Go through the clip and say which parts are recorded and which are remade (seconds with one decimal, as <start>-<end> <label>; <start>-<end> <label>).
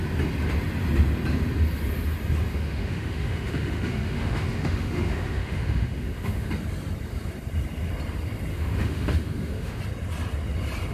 0.0-2.5 recorded; 2.5-6.5 remade; 6.5-8.5 recorded; 8.5-9.8 remade; 9.8-10.9 recorded